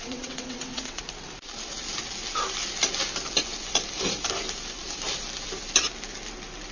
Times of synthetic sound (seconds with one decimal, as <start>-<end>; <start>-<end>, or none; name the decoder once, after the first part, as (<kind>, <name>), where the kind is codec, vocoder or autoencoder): 0.0-1.0 (vocoder, WaveNeXt)